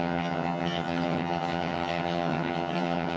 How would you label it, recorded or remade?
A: remade